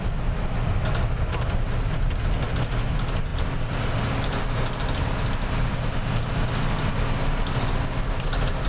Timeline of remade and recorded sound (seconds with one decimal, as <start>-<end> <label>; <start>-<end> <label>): 0.0-8.7 recorded